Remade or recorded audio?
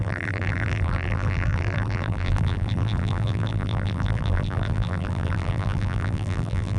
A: remade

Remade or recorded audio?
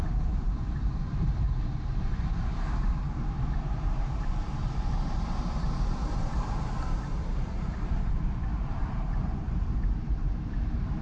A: remade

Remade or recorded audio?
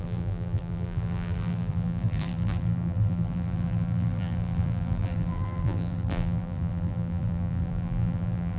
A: remade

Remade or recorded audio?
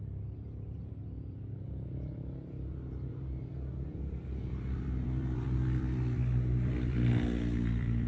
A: remade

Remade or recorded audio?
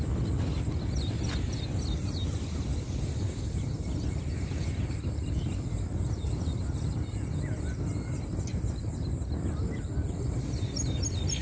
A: recorded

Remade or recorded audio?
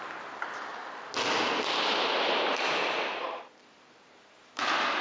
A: recorded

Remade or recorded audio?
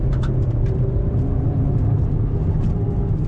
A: remade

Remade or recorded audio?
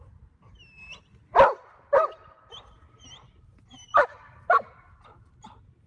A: recorded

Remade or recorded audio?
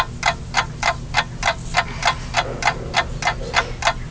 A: recorded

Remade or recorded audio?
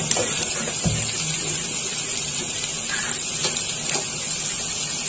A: recorded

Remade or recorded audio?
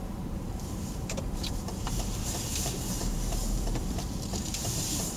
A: remade